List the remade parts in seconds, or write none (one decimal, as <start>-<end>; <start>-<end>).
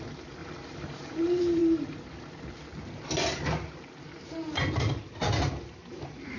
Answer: 0.0-1.6; 5.4-6.4